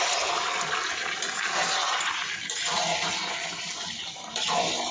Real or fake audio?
real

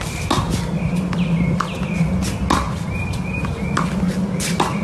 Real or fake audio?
real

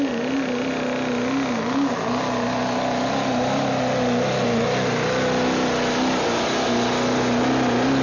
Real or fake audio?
real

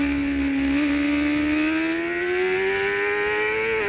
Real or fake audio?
real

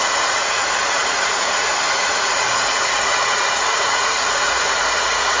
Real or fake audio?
fake